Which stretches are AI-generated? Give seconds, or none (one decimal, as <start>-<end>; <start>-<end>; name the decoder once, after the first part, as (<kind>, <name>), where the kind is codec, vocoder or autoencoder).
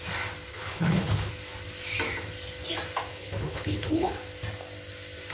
0.5-1.3 (codec, HILCodec); 3.1-4.2